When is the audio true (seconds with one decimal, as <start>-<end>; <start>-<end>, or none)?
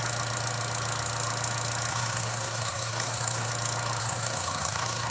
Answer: 0.0-1.9; 3.5-4.0